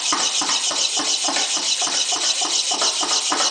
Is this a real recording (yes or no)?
yes